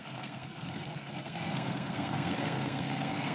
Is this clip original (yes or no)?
no